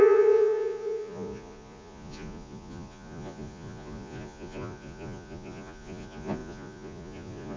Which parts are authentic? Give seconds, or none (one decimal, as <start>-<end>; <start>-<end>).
none